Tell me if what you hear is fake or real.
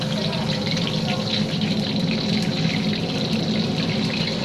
real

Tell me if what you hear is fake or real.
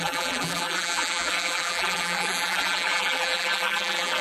fake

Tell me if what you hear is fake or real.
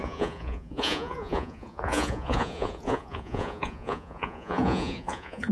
fake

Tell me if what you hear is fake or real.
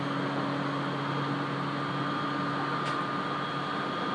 real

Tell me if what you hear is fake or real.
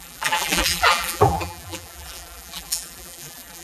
fake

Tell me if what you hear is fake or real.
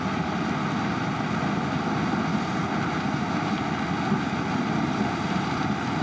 real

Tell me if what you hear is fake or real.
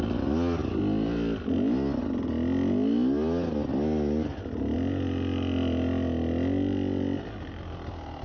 real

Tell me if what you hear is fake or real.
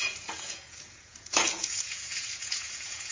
fake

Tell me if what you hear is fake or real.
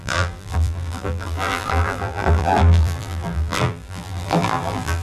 fake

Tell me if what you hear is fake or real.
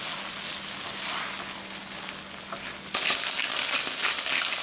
real